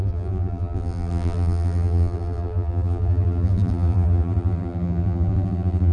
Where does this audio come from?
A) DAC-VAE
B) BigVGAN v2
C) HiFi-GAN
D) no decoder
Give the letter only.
B